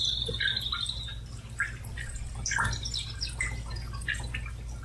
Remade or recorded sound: recorded